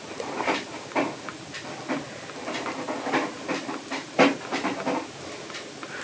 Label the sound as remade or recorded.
recorded